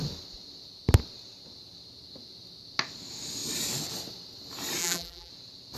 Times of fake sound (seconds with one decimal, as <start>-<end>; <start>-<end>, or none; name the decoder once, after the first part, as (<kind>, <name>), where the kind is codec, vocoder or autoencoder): 4.8-5.3 (vocoder, BigVGAN v2)